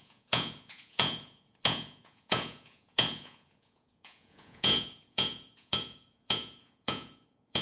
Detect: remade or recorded remade